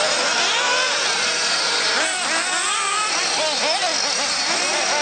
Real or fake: real